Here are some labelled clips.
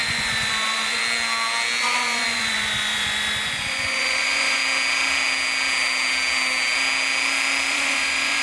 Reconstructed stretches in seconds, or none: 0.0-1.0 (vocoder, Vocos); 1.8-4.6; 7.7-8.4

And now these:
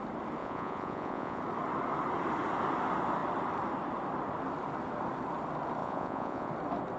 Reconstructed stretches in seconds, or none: 0.4-1.4 (vocoder, Vocos); 5.8-6.5

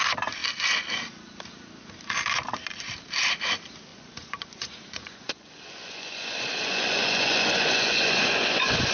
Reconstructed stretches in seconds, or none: 3.9-8.9 (vocoder, Vocos)